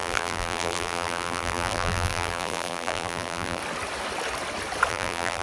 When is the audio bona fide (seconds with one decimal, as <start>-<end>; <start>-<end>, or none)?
3.6-4.9